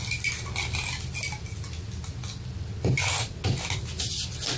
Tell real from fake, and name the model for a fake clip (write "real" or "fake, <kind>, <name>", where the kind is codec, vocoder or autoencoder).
real